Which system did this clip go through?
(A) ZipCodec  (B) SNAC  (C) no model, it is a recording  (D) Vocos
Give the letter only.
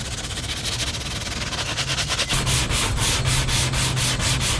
C